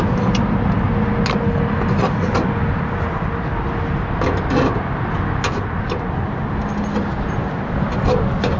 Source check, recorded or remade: recorded